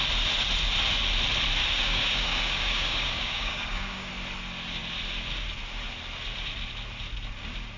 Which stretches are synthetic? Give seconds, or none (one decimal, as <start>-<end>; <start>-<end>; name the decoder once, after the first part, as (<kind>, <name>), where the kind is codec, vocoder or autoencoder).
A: 1.6-4.1 (codec, DAC)